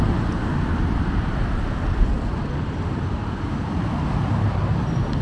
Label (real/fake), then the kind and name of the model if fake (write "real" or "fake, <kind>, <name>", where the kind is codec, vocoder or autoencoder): real